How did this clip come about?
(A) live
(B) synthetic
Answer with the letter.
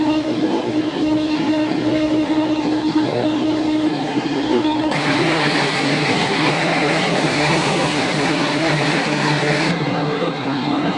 B